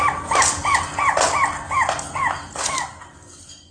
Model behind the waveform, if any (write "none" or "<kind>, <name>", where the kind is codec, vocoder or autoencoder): none